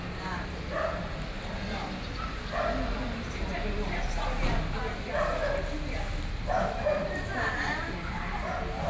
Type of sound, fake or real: real